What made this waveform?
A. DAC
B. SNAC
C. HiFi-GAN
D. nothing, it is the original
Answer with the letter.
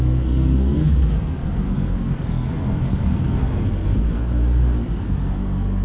B